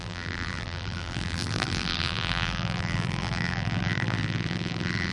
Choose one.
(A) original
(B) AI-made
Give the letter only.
B